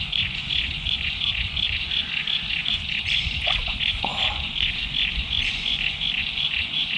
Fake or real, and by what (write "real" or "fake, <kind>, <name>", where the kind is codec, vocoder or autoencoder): fake, vocoder, Vocos